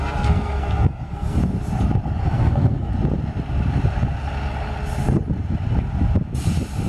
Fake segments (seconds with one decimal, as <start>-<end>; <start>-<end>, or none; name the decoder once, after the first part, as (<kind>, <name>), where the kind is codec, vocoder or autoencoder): 0.0-1.4 (codec, SNAC); 2.2-2.9